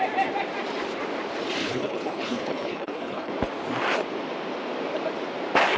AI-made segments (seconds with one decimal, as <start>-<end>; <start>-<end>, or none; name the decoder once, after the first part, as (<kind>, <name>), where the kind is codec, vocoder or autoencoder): 1.6-3.3 (codec, HILCodec)